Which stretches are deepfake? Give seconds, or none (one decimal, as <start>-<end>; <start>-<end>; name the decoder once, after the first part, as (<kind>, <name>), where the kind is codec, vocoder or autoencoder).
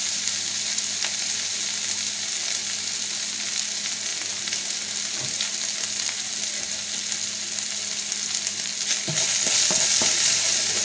none